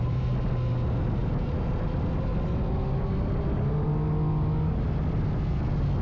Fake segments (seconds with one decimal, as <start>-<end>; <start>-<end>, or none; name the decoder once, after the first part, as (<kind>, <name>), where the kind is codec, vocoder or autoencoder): none